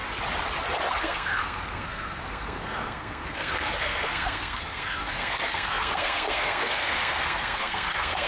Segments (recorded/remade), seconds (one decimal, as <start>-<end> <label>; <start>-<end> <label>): 0.0-1.0 recorded; 1.0-8.3 remade